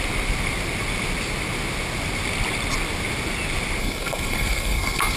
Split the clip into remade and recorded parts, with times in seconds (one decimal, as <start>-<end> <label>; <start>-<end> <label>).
0.0-3.8 recorded; 3.8-5.2 remade